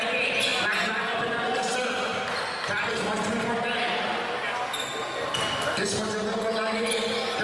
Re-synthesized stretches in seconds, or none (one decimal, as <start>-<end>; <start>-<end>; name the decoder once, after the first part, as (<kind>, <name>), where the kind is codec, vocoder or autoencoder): none